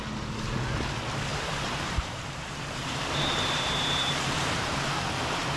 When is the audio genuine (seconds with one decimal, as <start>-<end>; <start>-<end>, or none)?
0.0-1.3; 4.7-5.6